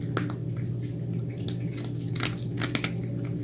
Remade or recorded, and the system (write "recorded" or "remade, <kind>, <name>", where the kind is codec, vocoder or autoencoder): recorded